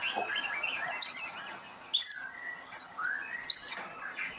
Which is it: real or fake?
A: real